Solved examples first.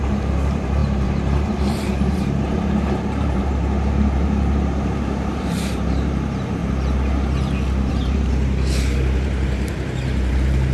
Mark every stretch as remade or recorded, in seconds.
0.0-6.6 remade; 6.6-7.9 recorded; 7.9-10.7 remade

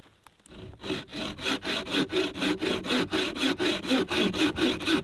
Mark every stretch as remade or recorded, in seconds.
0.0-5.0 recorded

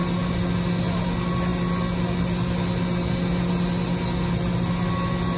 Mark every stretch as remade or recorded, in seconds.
0.0-5.4 recorded

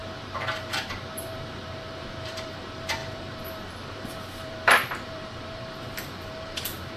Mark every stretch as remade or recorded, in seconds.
0.0-7.0 remade

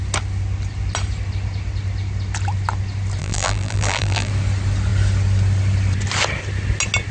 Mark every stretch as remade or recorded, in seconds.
0.0-3.2 recorded; 3.2-4.3 remade; 4.3-7.1 recorded

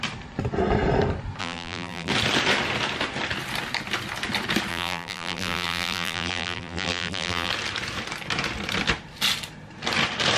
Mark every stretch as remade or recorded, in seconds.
0.0-1.4 recorded; 1.4-2.1 remade; 2.1-4.7 recorded; 4.7-7.5 remade; 7.5-10.4 recorded

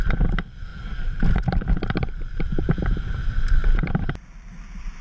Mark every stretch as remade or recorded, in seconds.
0.0-0.7 recorded; 0.7-2.8 remade; 2.8-3.6 recorded; 3.6-5.0 remade